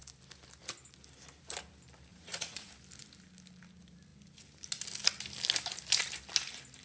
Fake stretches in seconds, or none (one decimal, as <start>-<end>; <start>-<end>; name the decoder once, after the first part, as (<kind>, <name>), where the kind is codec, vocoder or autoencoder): 2.1-2.7 (vocoder, Vocos)